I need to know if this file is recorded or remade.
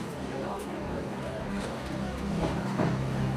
remade